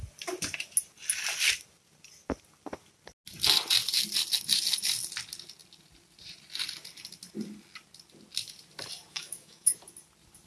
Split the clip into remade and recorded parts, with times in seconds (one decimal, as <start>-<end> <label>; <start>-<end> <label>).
0.0-9.1 recorded; 9.1-9.7 remade; 9.7-10.5 recorded